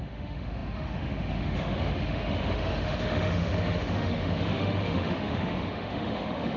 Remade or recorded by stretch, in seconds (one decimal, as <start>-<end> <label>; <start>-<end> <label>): 0.0-6.6 remade